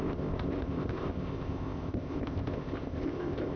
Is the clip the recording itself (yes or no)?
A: no